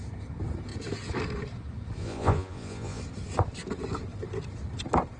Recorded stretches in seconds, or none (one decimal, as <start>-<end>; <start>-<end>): 0.0-2.0; 3.0-5.2